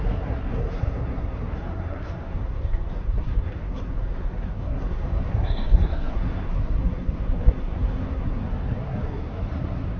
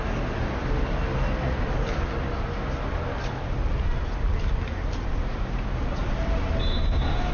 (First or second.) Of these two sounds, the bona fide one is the second